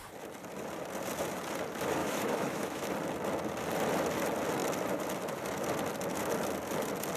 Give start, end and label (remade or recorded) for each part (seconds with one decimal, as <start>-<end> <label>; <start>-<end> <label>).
0.0-2.0 recorded; 2.0-2.9 remade; 2.9-7.2 recorded